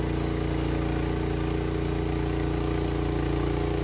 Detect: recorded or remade recorded